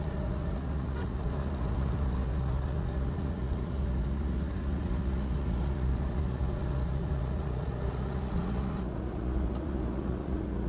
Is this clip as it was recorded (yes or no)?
no